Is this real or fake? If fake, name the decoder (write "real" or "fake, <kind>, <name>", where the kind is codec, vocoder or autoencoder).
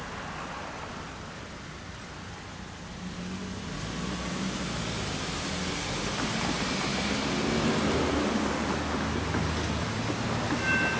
real